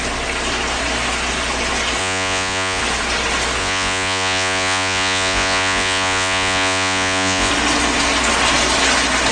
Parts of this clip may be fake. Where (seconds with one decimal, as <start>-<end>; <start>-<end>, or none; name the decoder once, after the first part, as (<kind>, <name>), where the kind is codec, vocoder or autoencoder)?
2.0-2.8 (vocoder, Vocos); 3.6-7.5